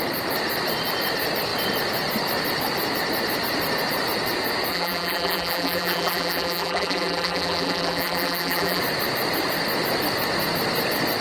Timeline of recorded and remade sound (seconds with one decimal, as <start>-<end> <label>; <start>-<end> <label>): 0.0-4.7 recorded; 4.7-8.8 remade; 8.8-11.2 recorded